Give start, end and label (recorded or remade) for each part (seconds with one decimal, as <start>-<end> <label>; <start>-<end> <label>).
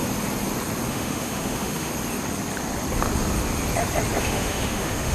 0.0-0.9 recorded; 0.9-1.9 remade; 1.9-4.2 recorded; 4.2-5.1 remade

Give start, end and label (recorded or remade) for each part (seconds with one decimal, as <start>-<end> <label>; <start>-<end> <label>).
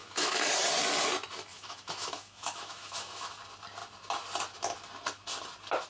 0.0-0.5 remade; 0.5-1.5 recorded; 1.5-3.4 remade; 3.4-5.9 recorded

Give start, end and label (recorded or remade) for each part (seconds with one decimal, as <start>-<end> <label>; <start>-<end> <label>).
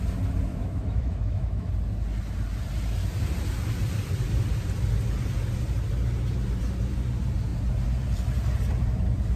0.0-0.5 recorded; 0.5-1.7 remade; 1.7-9.4 recorded